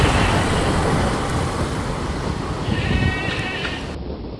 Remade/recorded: recorded